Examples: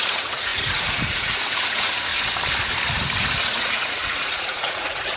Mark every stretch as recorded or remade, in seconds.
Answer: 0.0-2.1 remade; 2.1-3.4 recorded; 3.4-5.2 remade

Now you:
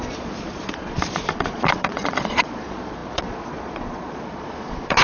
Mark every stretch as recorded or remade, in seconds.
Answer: 0.0-5.0 remade

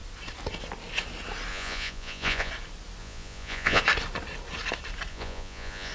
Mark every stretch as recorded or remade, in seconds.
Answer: 0.0-1.5 recorded; 1.5-2.5 remade; 2.5-3.0 recorded; 3.0-3.8 remade; 3.8-5.1 recorded; 5.1-5.9 remade